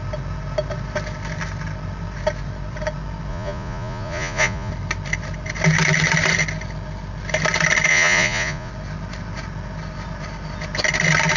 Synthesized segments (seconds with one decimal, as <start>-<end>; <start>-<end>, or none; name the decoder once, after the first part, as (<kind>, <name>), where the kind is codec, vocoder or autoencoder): 3.3-4.7 (vocoder, Vocos); 7.9-8.7